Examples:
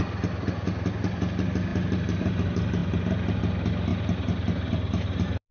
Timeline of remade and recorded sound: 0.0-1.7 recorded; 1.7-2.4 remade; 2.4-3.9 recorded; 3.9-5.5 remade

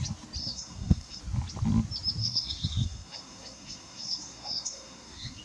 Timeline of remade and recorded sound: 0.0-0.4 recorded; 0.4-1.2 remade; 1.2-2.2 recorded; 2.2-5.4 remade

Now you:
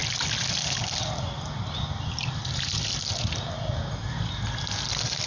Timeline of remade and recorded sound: 0.0-5.3 recorded

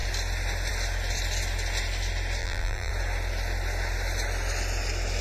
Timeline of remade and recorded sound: 0.0-2.4 recorded; 2.4-2.9 remade; 2.9-5.2 recorded